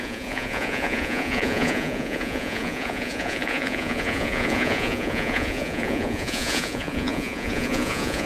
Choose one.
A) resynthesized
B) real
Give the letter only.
A